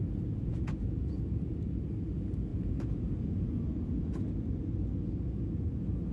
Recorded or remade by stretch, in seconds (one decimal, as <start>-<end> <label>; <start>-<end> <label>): 0.0-0.5 recorded; 0.5-1.4 remade; 1.4-2.5 recorded; 2.5-4.2 remade; 4.2-6.1 recorded

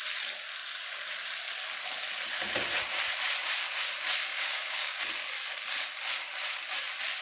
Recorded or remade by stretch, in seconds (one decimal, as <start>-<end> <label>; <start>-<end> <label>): 0.0-4.3 recorded; 4.3-5.0 remade; 5.0-7.2 recorded

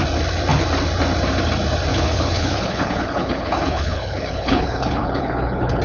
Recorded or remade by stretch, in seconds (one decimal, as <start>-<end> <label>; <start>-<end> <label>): 0.0-1.9 recorded; 1.9-5.8 remade

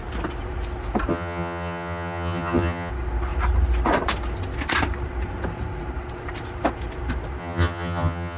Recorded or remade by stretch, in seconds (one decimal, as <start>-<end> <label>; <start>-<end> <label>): 0.0-1.1 recorded; 1.1-2.9 remade; 2.9-7.4 recorded; 7.4-8.4 remade